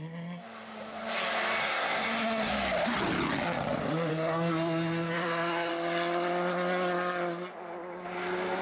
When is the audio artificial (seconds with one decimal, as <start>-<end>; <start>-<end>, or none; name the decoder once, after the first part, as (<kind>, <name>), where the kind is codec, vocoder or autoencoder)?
1.6-2.5 (codec, SNAC); 4.1-5.7